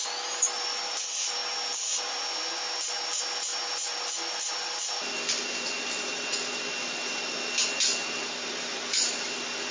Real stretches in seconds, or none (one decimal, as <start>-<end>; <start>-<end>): 0.0-9.7